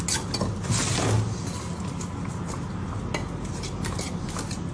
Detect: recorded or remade recorded